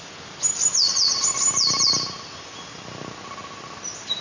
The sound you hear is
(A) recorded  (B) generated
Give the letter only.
A